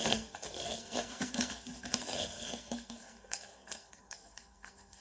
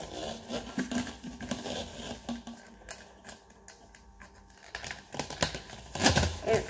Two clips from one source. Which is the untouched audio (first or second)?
second